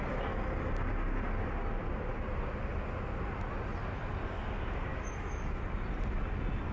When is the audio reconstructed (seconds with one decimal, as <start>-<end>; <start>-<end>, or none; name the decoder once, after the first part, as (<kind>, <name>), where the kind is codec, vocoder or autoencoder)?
4.9-5.6 (autoencoder, DAC-VAE)